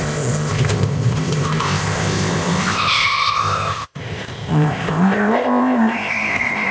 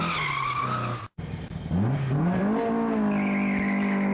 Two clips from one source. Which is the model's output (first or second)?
first